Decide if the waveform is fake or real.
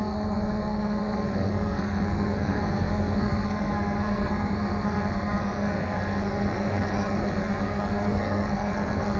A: fake